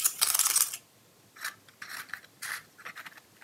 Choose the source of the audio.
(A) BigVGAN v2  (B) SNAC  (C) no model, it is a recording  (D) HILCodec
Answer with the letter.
C